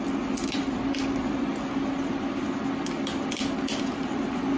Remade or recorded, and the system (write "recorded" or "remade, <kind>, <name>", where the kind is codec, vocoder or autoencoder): recorded